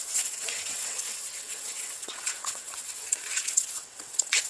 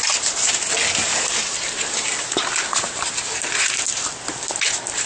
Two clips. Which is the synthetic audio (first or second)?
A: first